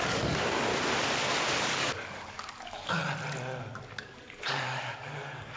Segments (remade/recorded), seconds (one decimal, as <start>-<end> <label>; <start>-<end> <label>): 0.0-0.7 remade; 0.7-1.6 recorded; 1.6-3.0 remade; 3.0-3.6 recorded; 3.6-5.6 remade